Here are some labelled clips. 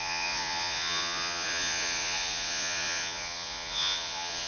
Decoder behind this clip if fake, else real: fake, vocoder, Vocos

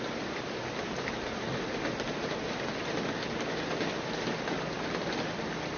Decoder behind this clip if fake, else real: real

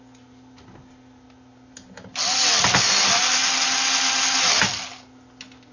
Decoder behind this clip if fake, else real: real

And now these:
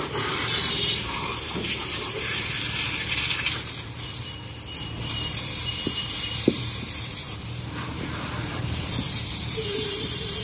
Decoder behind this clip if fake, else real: fake, vocoder, BigVGAN v2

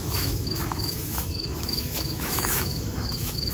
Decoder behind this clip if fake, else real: fake, autoencoder, DAC-VAE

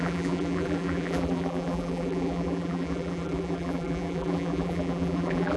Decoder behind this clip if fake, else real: fake, vocoder, BigVGAN v2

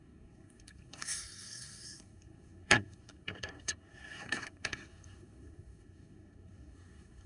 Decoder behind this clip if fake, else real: fake, codec, SNAC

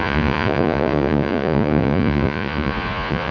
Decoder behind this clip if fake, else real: fake, vocoder, Vocos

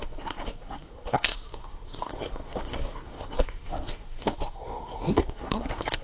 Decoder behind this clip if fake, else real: fake, codec, SNAC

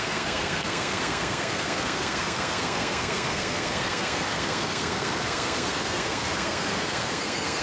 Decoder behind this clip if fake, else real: fake, codec, SNAC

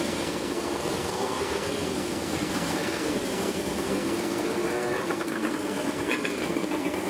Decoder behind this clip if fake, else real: fake, codec, SNAC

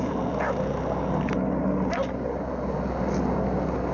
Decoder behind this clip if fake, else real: real